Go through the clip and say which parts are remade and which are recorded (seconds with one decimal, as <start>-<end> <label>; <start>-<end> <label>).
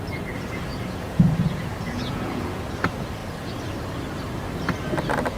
0.0-0.7 recorded; 0.7-2.7 remade; 2.7-5.4 recorded